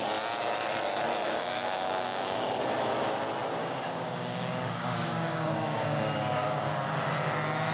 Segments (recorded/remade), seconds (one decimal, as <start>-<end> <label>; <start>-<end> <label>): 0.0-1.2 recorded; 1.2-2.6 remade; 2.6-3.6 recorded; 3.6-6.7 remade; 6.7-7.7 recorded